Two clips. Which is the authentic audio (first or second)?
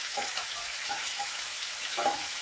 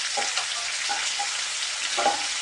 second